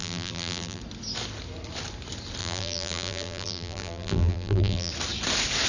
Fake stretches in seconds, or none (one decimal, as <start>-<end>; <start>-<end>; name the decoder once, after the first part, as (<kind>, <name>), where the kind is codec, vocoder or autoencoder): 0.0-0.8 (vocoder, BigVGAN v2); 2.4-4.9